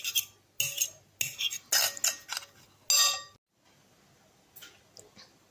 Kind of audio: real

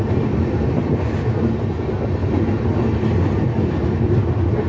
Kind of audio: real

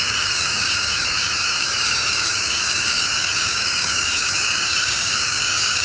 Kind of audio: fake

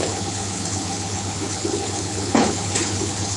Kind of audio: fake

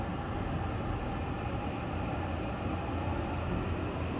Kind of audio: real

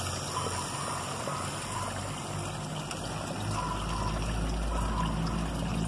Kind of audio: real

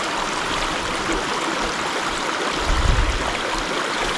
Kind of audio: real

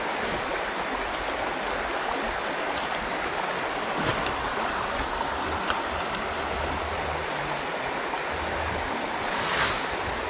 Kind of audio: real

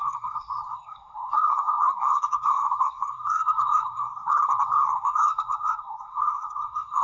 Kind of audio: fake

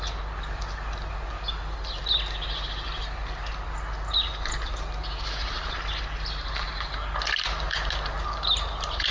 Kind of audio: real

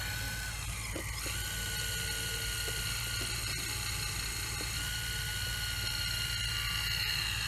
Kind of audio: real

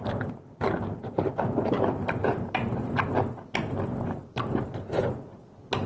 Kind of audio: real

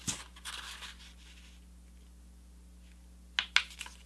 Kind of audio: real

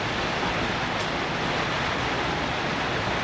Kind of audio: real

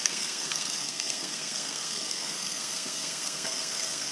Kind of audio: fake